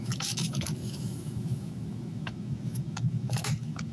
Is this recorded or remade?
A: remade